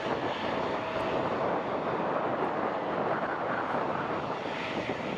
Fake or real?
real